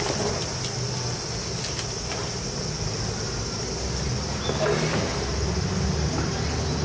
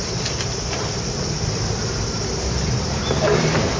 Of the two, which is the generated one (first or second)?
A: second